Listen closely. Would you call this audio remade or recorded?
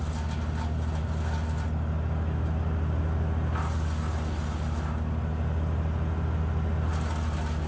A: recorded